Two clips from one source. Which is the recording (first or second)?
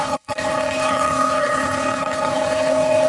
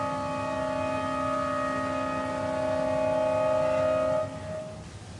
second